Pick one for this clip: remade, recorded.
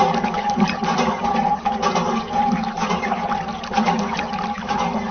recorded